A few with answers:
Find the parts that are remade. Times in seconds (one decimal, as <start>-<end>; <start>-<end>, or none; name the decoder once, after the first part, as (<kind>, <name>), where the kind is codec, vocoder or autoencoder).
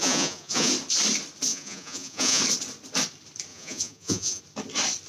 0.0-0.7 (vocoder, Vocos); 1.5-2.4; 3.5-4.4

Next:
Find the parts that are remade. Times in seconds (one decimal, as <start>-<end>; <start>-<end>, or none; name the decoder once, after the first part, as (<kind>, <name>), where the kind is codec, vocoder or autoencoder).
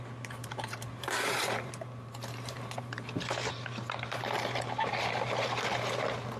0.4-3.5 (vocoder, BigVGAN v2)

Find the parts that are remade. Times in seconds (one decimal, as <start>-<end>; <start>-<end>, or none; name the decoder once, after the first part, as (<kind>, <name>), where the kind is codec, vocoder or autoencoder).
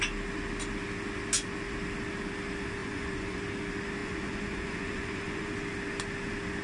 2.8-3.4 (vocoder, Vocos); 4.0-5.5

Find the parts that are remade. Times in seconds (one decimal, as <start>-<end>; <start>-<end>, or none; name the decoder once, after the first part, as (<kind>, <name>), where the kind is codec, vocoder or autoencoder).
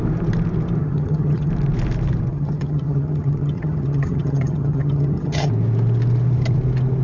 0.8-1.5 (vocoder, HiFi-GAN); 2.3-5.5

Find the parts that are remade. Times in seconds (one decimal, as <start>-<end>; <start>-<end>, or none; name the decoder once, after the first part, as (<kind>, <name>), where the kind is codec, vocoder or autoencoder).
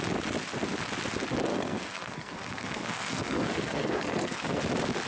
1.5-4.6 (codec, SNAC)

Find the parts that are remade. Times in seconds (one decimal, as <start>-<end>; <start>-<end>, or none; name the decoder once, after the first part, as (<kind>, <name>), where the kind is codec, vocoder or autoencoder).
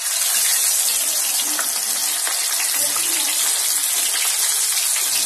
none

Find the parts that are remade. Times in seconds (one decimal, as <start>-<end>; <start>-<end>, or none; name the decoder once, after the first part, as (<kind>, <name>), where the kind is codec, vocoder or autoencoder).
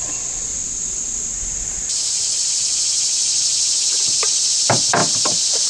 5.0-5.7 (vocoder, BigVGAN v2)